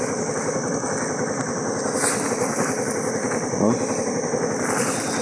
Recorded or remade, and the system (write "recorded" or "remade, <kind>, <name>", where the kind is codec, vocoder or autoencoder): recorded